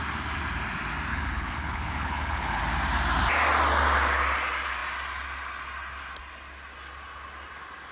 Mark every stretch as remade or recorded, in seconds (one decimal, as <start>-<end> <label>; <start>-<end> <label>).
0.0-1.1 recorded; 1.1-2.6 remade; 2.6-7.9 recorded